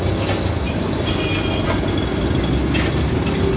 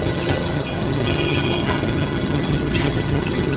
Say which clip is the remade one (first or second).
second